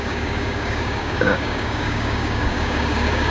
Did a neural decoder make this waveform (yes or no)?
yes